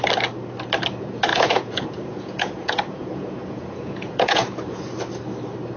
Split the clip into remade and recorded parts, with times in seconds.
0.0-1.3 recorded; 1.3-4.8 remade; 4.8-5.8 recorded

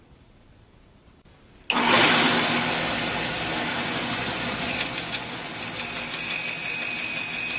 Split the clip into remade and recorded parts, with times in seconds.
0.0-3.7 recorded; 3.7-5.5 remade; 5.5-7.6 recorded

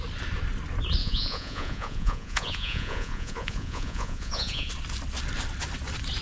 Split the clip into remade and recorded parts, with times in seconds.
0.0-1.0 recorded; 1.0-4.7 remade; 4.7-6.2 recorded